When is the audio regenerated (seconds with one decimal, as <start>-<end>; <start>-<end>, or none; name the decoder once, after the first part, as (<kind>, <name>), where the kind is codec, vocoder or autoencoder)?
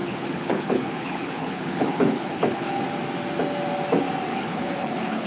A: 0.0-2.8 (codec, HILCodec); 4.3-5.3